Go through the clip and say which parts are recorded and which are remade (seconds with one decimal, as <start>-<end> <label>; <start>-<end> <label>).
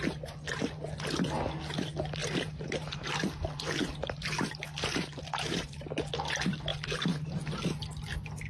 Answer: 0.0-2.2 recorded; 2.2-6.1 remade; 6.1-6.7 recorded; 6.7-7.3 remade; 7.3-8.5 recorded